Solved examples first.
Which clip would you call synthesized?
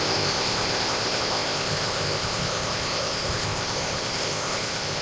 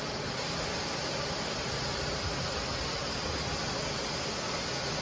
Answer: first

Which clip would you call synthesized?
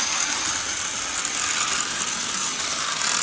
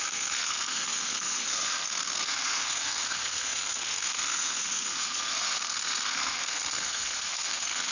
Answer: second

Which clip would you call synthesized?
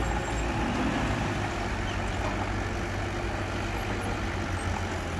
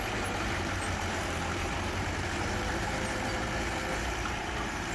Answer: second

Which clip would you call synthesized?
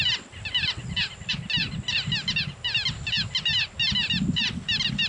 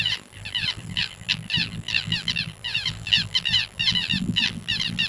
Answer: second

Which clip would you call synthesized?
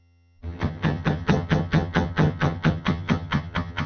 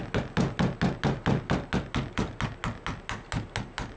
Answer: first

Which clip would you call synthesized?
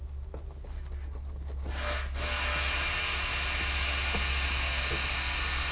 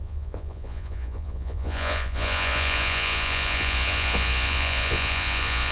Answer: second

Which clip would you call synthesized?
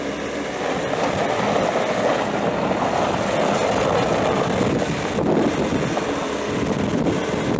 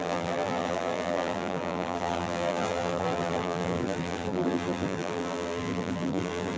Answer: second